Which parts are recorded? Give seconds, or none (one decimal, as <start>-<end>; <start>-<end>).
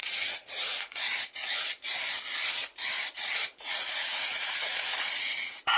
1.7-2.6